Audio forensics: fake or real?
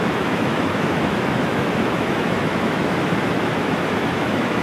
fake